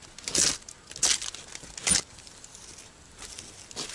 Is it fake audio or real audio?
real